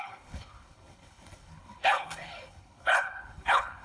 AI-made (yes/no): yes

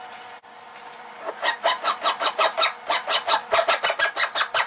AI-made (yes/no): no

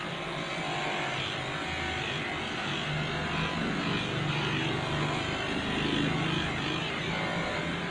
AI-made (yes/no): no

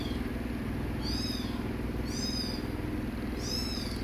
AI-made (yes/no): no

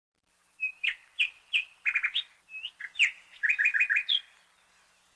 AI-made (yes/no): no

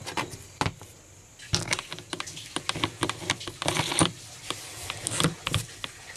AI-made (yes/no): no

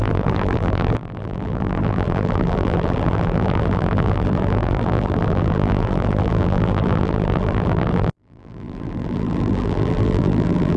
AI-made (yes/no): yes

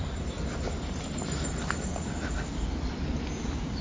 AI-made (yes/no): no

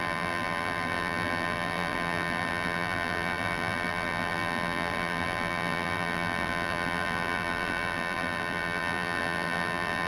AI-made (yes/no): yes